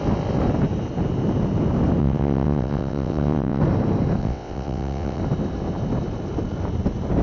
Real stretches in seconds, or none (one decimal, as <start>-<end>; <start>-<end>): 0.0-2.0; 3.6-4.2; 5.2-7.2